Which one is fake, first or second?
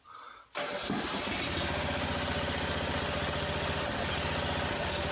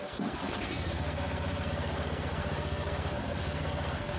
second